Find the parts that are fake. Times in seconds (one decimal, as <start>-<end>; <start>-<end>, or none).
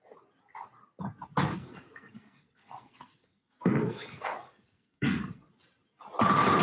1.5-5.5